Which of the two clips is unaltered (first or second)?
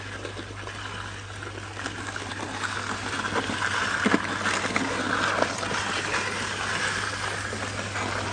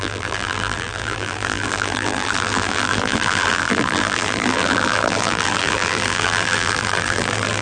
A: first